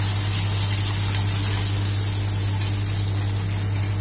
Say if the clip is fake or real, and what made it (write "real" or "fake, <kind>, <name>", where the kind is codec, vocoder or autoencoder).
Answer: real